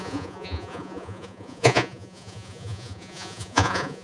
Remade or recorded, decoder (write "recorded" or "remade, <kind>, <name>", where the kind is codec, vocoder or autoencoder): remade, vocoder, Vocos